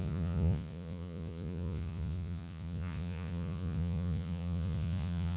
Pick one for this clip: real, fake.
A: fake